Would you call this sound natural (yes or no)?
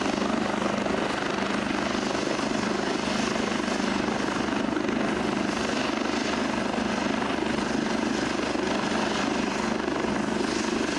yes